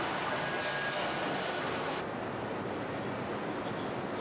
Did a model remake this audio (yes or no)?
no